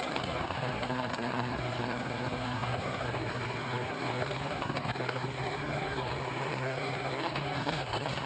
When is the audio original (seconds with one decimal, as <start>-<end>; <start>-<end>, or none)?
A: none